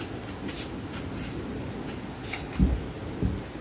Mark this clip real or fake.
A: real